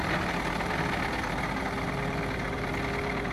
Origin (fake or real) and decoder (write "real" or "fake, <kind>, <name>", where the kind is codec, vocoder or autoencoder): real